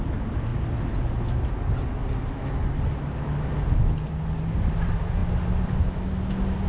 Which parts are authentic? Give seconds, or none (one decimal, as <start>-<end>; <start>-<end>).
0.0-6.7